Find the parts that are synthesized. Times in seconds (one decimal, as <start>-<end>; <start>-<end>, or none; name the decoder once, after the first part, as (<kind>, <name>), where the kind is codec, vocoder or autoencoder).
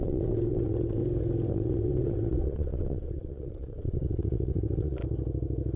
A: 0.0-1.0 (vocoder, WaveNeXt); 1.5-5.0